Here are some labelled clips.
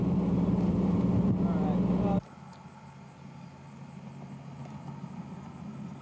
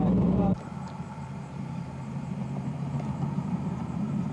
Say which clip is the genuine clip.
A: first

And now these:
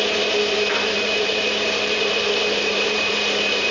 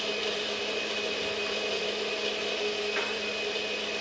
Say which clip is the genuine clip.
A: second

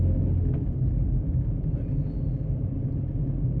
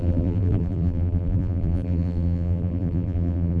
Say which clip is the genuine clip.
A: first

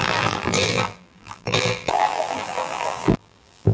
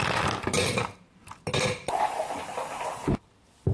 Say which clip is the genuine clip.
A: second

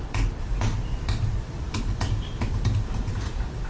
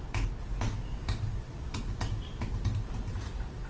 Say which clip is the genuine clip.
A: second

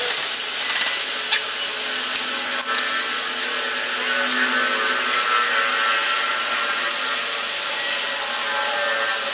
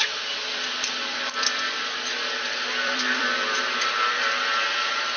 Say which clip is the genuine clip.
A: first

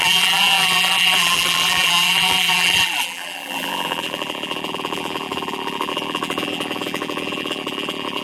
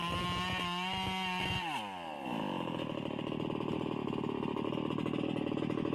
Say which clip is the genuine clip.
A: second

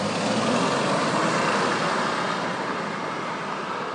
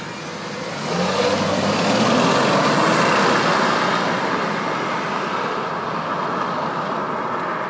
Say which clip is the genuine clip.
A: second